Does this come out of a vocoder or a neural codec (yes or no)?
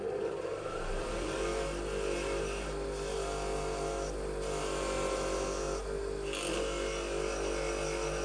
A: no